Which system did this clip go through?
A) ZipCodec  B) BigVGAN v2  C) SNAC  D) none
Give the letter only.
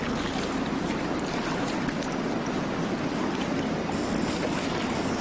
D